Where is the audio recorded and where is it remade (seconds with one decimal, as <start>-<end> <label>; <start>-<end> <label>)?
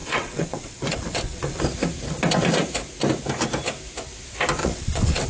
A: 0.0-1.6 remade; 1.6-4.6 recorded; 4.6-5.3 remade